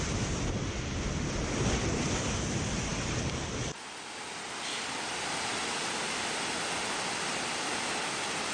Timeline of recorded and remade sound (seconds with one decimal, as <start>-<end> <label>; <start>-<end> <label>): 0.0-8.5 recorded

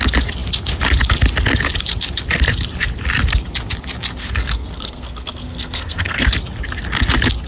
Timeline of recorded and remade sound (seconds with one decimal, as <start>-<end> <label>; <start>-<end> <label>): 0.0-4.2 recorded; 4.2-6.3 remade; 6.3-7.5 recorded

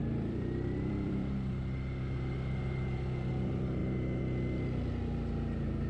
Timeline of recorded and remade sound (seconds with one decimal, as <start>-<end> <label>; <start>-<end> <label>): 0.0-3.8 remade; 3.8-5.9 recorded

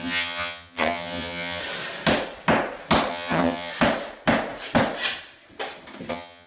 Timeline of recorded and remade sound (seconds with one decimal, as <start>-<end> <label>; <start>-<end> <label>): 0.0-1.6 remade; 1.6-3.1 recorded; 3.1-3.7 remade; 3.7-6.1 recorded; 6.1-6.5 remade

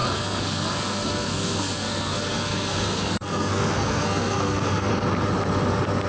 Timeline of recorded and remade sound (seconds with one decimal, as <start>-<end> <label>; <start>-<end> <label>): 0.0-4.9 remade; 4.9-6.1 recorded